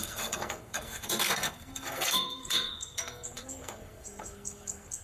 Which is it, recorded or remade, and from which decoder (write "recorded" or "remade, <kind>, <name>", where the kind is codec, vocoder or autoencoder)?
remade, codec, SNAC